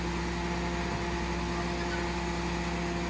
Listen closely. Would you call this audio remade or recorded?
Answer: recorded